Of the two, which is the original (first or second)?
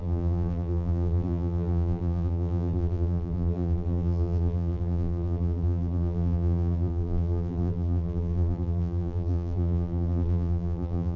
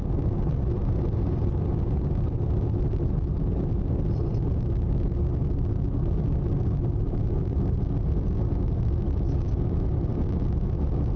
second